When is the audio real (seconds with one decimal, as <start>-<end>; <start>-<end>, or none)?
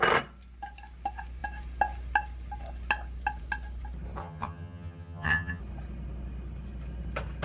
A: 0.0-4.2; 5.6-7.4